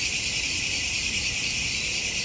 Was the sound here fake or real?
real